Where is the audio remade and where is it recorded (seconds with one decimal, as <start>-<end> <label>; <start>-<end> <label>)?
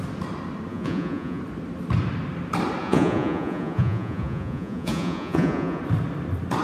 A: 0.0-0.7 recorded; 0.7-1.4 remade; 1.4-2.8 recorded; 2.8-5.8 remade; 5.8-6.6 recorded